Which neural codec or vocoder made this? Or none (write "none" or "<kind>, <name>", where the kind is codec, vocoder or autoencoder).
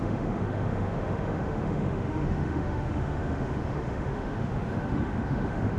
autoencoder, DAC-VAE